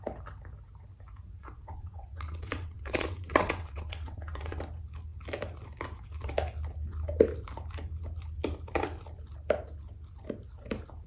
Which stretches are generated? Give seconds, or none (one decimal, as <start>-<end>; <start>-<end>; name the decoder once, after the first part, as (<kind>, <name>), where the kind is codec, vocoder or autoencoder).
1.4-4.6 (vocoder, WaveNeXt)